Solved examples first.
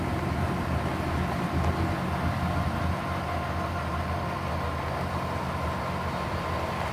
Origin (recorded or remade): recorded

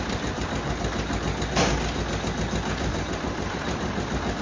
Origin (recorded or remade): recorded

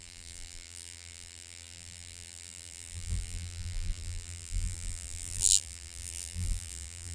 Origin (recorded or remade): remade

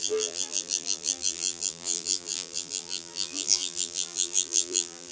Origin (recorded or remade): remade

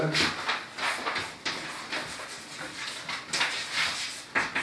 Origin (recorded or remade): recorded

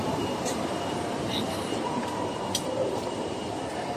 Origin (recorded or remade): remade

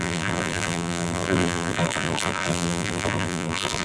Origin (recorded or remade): remade